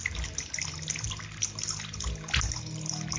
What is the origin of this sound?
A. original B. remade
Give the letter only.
A